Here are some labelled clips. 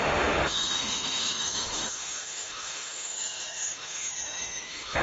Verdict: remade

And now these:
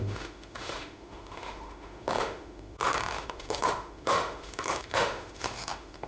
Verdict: remade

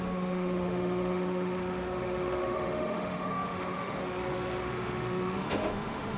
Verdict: remade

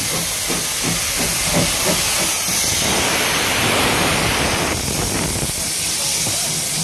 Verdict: recorded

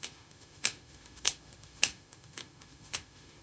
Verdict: remade